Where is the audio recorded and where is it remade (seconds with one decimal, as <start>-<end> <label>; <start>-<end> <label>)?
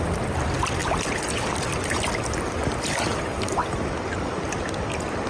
0.0-0.8 remade; 0.8-1.5 recorded; 1.5-3.6 remade; 3.6-4.3 recorded; 4.3-5.3 remade